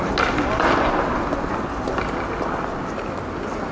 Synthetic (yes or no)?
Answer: no